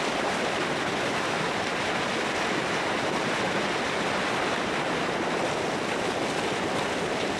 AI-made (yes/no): no